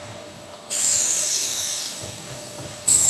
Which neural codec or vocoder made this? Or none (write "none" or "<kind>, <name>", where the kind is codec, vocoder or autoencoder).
codec, DAC